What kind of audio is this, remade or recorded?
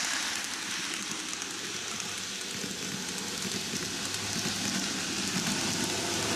recorded